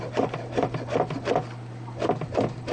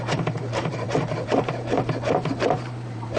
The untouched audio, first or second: first